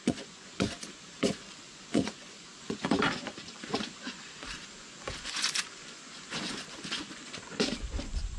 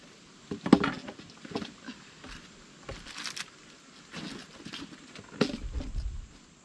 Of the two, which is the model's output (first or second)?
first